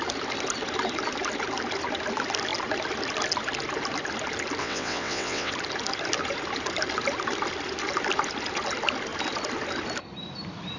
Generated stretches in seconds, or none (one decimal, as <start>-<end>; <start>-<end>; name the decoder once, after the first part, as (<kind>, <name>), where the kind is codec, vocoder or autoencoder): 4.6-5.5 (vocoder, WaveNeXt)